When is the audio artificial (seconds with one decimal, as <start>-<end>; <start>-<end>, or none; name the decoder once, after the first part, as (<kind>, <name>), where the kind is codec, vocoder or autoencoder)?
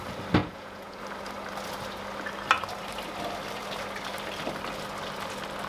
0.4-1.0 (vocoder, Vocos)